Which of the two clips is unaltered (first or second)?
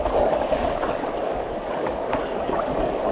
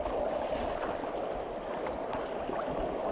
second